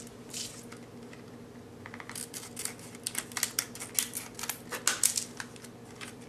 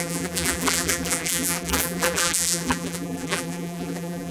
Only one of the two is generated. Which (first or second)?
second